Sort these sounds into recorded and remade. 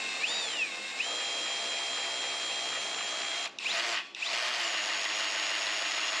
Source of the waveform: recorded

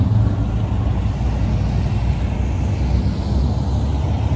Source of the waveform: recorded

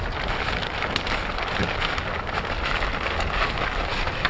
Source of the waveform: recorded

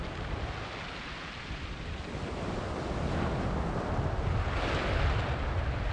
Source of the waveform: recorded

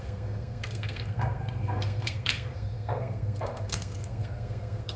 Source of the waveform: remade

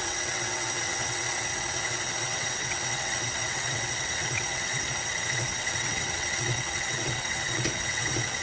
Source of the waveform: remade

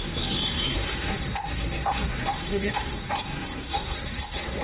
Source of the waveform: remade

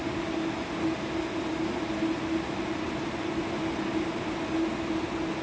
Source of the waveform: recorded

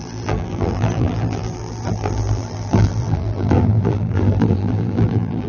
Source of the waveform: remade